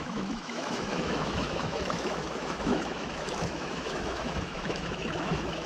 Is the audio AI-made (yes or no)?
yes